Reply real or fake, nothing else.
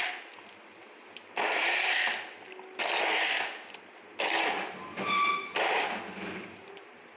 real